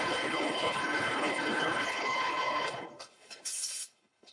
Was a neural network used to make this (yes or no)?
yes